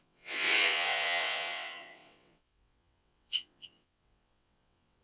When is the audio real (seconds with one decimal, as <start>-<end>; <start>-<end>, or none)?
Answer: none